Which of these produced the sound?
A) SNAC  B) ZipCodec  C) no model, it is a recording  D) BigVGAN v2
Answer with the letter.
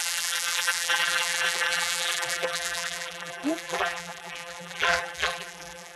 D